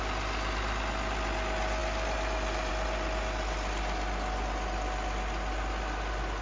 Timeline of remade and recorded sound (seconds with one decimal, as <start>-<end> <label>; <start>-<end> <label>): 0.0-6.4 recorded